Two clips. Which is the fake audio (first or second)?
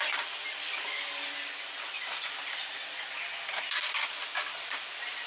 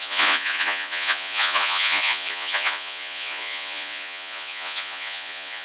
second